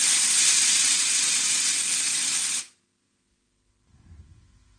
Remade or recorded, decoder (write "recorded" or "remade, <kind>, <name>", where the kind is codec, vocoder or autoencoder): recorded